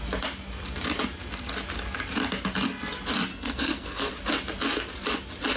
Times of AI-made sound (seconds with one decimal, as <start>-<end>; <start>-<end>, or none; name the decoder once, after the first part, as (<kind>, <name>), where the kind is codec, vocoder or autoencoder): 3.3-4.1 (codec, SNAC)